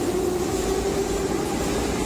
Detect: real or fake real